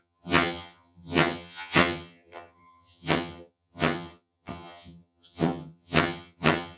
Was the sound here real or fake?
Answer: fake